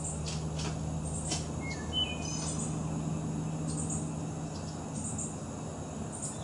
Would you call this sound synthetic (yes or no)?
no